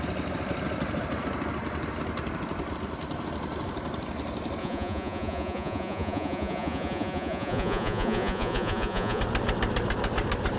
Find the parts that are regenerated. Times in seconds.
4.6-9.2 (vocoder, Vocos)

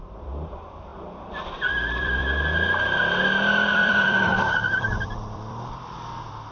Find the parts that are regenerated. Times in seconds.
0.0-0.9 (vocoder, BigVGAN v2); 1.5-2.2; 3.7-6.5

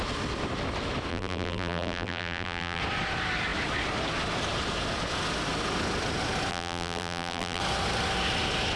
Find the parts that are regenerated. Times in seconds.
1.1-2.8 (vocoder, BigVGAN v2); 6.5-7.6